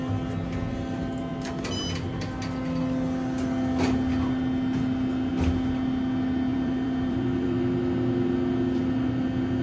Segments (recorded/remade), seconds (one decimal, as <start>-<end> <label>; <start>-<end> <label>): 0.0-6.5 recorded; 6.5-7.8 remade; 7.8-9.6 recorded

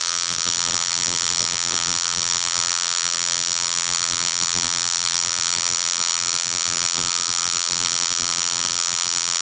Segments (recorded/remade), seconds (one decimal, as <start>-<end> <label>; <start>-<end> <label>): 0.0-9.4 remade

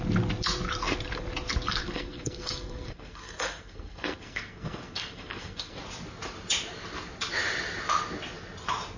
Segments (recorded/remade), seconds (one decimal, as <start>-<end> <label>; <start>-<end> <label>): 0.0-1.8 recorded; 1.8-5.8 remade; 5.8-9.0 recorded

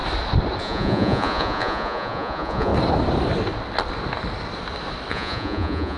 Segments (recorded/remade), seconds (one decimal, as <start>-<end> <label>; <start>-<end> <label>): 0.0-0.6 recorded; 0.6-2.7 remade; 2.7-5.1 recorded; 5.1-6.0 remade